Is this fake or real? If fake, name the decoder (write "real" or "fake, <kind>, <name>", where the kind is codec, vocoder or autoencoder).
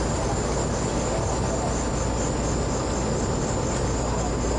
real